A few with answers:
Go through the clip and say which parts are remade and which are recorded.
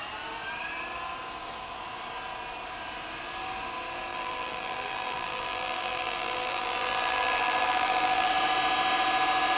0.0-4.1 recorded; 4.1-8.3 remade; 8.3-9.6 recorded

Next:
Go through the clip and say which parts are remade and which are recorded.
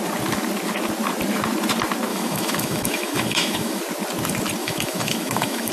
0.0-2.1 recorded; 2.1-3.8 remade; 3.8-4.6 recorded; 4.6-5.7 remade